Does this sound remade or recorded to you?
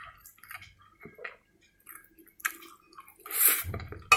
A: recorded